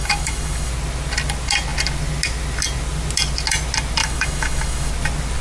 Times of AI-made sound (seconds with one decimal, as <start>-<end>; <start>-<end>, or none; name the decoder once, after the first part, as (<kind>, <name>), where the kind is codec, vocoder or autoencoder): 0.0-0.7 (autoencoder, DAC-VAE); 4.0-4.9